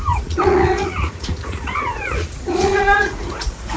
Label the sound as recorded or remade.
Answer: remade